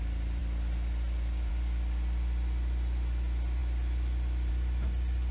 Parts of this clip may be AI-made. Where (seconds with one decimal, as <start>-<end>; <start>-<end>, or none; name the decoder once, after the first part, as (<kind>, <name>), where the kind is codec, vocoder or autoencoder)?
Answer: none